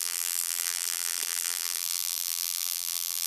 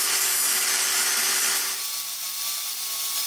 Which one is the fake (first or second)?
first